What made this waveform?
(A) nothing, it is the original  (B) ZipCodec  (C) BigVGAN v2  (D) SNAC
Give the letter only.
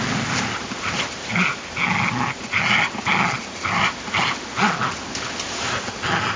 A